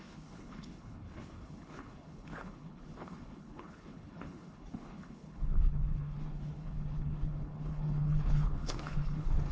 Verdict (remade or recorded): remade